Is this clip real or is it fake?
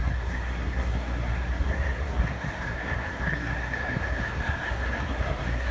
fake